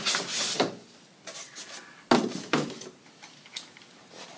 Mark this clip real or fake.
real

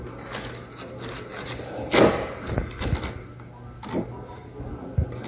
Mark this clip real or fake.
real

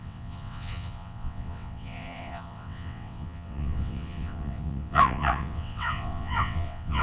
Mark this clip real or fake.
fake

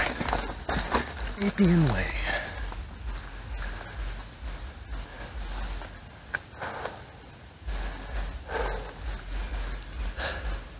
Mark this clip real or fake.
real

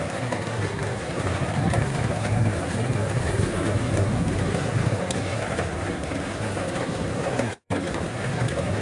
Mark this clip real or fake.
fake